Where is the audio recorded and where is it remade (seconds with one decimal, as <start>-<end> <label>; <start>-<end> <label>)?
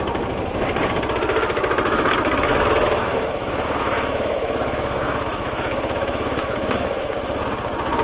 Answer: 0.0-1.3 recorded; 1.3-2.1 remade; 2.1-2.5 recorded; 2.5-7.1 remade; 7.1-8.0 recorded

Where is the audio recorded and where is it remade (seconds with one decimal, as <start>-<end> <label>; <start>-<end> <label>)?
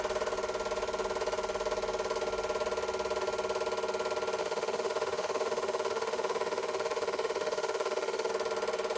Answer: 0.0-4.4 recorded; 4.4-8.3 remade; 8.3-9.0 recorded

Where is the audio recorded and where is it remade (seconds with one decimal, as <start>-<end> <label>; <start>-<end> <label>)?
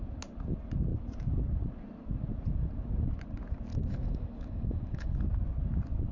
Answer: 0.0-3.7 recorded; 3.7-5.2 remade; 5.2-6.1 recorded